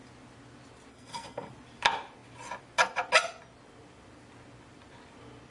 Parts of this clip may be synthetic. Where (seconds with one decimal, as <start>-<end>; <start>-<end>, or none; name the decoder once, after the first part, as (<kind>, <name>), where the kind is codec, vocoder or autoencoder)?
0.9-1.5 (codec, SNAC)